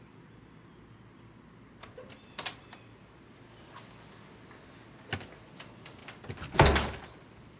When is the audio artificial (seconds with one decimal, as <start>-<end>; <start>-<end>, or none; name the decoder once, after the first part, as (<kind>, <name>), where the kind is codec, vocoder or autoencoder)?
none